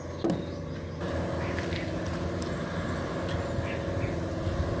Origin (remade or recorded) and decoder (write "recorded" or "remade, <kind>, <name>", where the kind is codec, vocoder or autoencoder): recorded